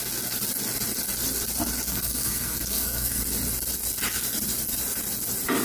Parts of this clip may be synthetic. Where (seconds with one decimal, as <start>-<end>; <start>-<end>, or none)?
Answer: 1.9-3.2